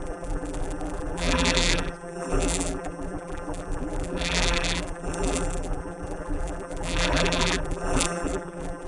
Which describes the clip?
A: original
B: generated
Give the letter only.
B